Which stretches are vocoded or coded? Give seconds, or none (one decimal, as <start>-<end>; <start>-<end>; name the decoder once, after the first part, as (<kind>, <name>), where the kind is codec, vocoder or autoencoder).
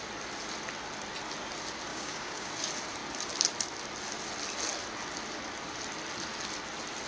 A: 1.9-2.5 (codec, DAC)